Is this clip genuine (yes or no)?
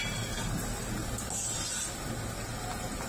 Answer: yes